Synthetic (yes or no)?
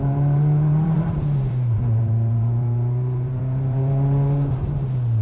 yes